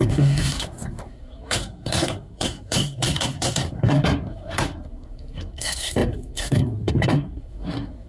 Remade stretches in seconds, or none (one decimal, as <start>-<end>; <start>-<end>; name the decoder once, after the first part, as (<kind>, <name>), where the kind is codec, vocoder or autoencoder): 0.0-8.1 (codec, SNAC)